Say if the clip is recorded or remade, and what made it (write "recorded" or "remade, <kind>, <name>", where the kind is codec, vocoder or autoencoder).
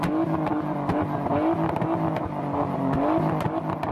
recorded